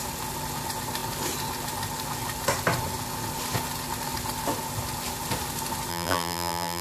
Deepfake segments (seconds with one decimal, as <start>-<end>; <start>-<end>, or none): 5.9-6.8